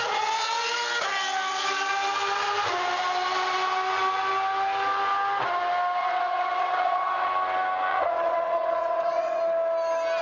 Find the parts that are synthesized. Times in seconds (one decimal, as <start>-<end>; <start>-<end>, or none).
6.0-7.3; 7.9-9.4